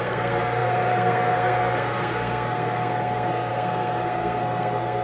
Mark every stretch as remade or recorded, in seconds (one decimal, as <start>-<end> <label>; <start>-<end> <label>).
0.0-5.0 remade